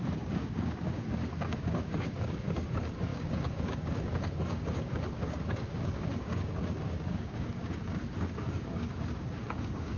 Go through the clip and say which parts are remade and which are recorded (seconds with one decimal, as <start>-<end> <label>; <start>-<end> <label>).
0.0-10.0 remade